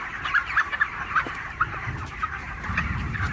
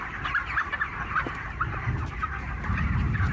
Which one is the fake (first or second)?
first